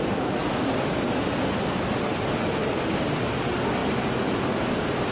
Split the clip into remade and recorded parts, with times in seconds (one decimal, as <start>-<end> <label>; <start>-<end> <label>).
0.0-5.1 recorded